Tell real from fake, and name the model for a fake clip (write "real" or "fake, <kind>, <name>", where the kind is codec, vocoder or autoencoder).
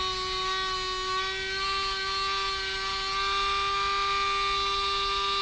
real